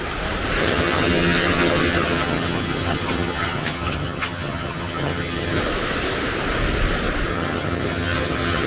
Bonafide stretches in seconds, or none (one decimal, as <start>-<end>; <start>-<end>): 0.0-0.6; 5.6-7.3